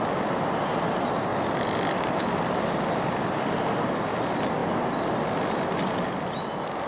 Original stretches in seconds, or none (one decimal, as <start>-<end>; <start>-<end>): 0.0-6.9